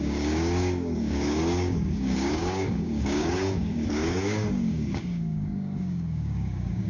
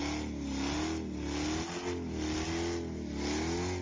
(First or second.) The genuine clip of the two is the second